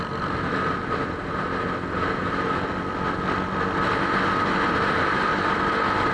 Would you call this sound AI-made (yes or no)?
no